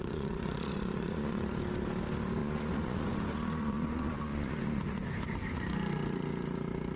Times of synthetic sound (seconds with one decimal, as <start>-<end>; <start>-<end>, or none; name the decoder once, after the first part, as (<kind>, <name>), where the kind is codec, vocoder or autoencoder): 0.0-1.6 (vocoder, Vocos); 2.4-5.1